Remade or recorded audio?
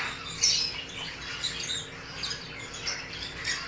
recorded